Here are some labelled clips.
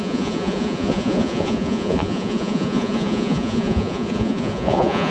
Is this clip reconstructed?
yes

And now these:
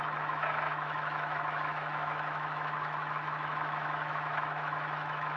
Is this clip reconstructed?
yes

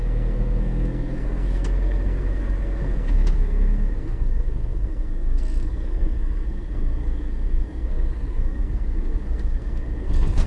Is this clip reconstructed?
yes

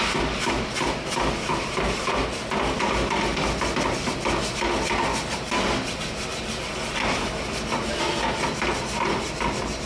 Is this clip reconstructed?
no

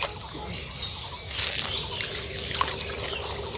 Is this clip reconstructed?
no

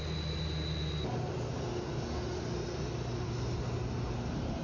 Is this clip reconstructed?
no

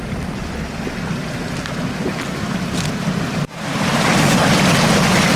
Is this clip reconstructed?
no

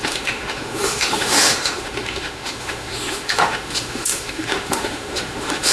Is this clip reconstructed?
yes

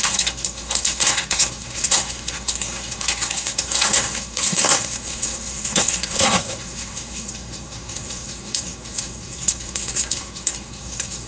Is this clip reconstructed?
yes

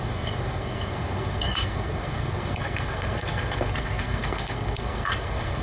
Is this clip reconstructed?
yes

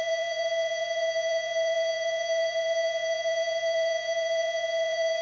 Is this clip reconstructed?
yes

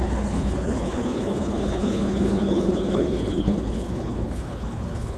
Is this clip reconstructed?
yes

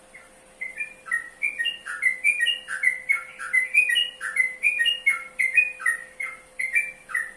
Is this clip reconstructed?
no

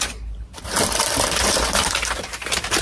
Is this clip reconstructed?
yes